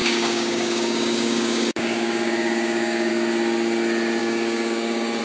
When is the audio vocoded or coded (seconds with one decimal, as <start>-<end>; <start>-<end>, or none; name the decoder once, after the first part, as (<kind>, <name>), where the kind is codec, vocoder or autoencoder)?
0.0-3.1 (codec, DAC); 4.2-5.2